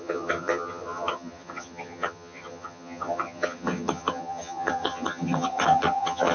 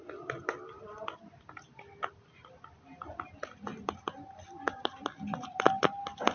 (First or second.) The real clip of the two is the second